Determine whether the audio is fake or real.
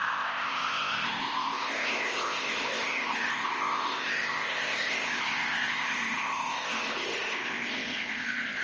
fake